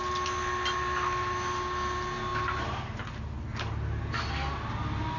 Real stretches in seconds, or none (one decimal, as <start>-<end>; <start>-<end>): 0.0-5.2